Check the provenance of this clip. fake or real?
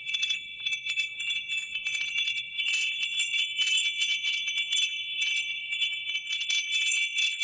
fake